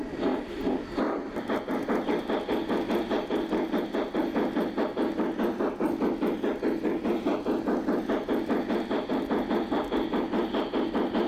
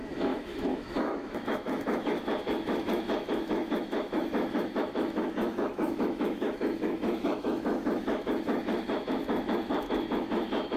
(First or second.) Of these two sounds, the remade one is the second